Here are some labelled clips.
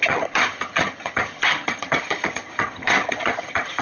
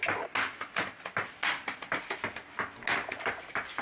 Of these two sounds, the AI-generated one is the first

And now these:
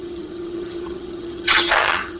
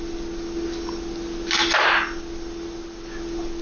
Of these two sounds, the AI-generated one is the first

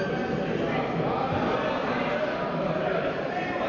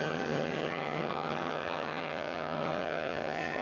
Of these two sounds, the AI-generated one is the second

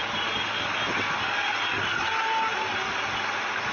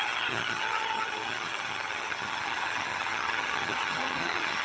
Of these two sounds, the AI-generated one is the second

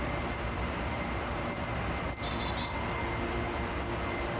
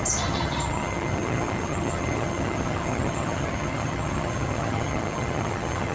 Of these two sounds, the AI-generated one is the second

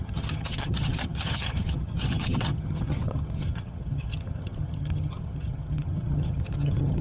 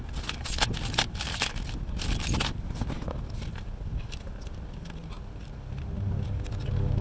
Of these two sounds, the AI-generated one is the first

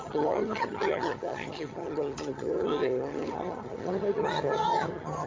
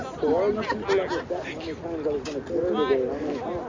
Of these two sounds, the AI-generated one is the first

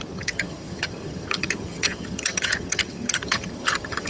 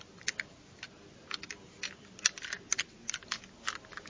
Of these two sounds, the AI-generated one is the first